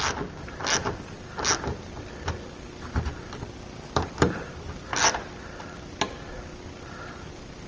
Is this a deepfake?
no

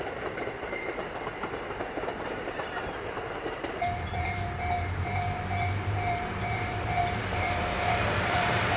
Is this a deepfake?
yes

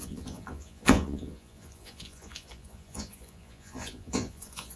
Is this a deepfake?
yes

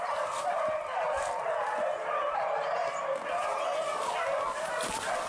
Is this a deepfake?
no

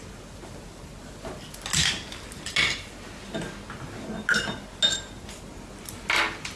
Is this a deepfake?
no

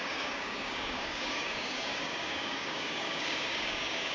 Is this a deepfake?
yes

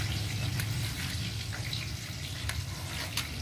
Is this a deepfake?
no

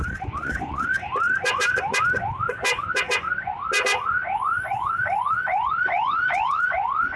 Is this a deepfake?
yes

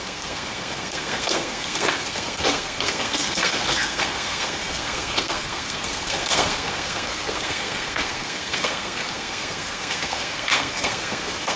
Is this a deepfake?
yes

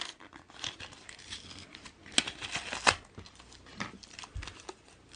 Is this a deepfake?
no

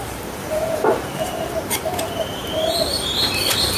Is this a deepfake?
yes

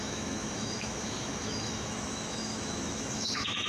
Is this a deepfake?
yes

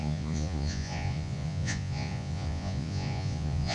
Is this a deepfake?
yes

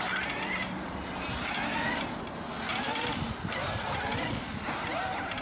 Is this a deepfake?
no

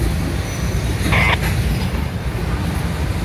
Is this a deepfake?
no